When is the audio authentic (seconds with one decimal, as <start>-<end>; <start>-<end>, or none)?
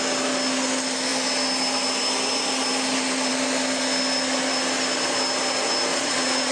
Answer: 0.0-5.9